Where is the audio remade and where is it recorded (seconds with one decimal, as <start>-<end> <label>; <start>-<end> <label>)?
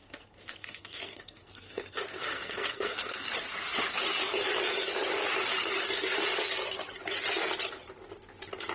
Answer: 0.0-3.3 remade; 3.3-8.7 recorded